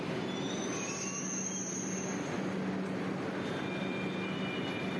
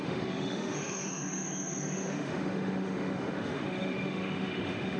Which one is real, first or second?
first